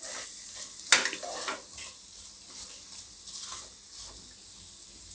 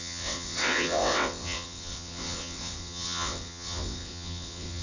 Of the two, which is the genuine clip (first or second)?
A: first